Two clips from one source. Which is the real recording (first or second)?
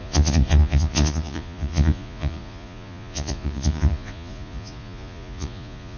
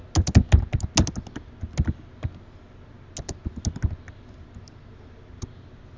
second